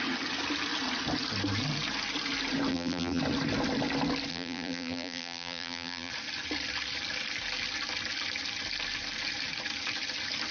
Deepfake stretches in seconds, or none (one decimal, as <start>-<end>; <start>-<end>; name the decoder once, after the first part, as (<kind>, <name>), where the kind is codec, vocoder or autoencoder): 2.7-3.2 (vocoder, BigVGAN v2); 4.3-6.1